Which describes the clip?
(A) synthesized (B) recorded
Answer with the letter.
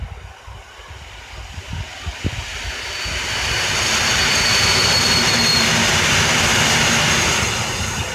B